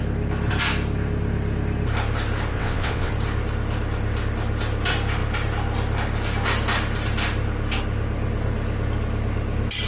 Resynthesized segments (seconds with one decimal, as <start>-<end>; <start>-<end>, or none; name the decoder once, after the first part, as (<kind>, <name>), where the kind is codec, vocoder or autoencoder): 2.5-3.1 (vocoder, WaveNeXt)